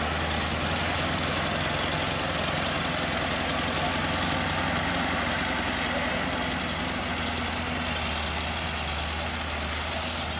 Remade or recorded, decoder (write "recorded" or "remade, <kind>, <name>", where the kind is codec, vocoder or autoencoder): recorded